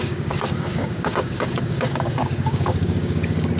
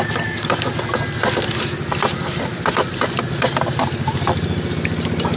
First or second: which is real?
second